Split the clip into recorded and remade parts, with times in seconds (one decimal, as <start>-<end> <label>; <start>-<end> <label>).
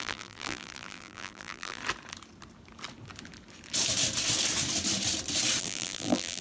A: 0.0-1.8 remade; 1.8-5.6 recorded; 5.6-6.4 remade